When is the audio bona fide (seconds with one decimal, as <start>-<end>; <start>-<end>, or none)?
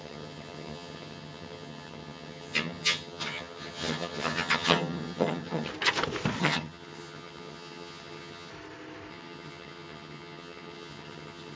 5.7-6.4; 8.5-9.1